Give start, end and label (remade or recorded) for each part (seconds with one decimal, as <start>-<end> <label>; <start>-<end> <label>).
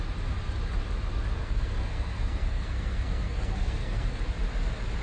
0.0-1.4 recorded; 1.4-4.2 remade; 4.2-5.0 recorded